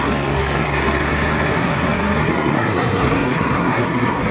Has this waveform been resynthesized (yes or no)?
yes